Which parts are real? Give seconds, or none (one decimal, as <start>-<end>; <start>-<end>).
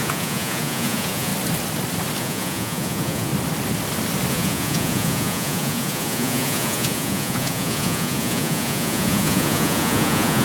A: 1.3-2.2; 3.3-4.3